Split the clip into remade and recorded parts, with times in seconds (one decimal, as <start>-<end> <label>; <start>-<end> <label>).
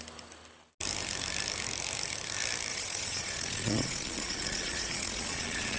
0.0-2.7 recorded; 2.7-5.8 remade